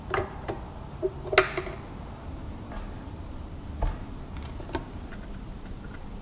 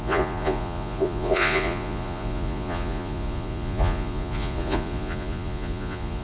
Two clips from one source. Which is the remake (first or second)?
second